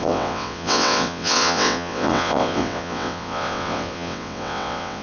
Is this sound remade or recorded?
remade